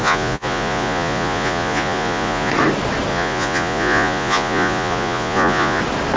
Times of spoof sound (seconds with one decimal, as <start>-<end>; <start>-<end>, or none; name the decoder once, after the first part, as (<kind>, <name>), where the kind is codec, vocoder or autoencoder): 0.0-2.5 (vocoder, Vocos); 3.1-5.8